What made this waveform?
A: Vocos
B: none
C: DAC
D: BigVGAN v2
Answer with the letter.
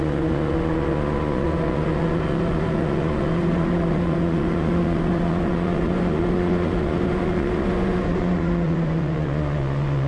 A